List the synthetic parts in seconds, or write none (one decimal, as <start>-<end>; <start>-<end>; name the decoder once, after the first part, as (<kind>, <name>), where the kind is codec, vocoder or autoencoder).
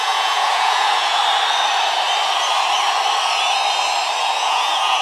0.0-1.2 (vocoder, Vocos); 4.2-5.0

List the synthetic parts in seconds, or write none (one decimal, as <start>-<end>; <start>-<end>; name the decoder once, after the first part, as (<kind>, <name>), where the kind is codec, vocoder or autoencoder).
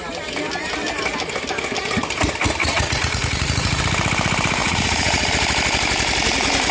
2.6-3.8 (vocoder, Vocos); 4.6-5.3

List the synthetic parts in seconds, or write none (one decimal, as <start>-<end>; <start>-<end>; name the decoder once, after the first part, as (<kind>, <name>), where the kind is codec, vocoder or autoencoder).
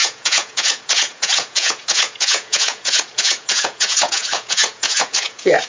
0.0-5.7 (vocoder, Vocos)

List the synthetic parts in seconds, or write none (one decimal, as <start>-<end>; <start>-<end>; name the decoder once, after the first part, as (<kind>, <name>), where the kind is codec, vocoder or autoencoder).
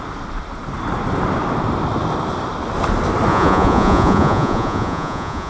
3.3-5.5 (vocoder, Vocos)